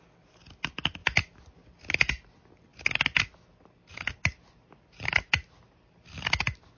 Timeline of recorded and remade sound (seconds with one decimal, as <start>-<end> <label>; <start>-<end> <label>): 0.0-6.8 recorded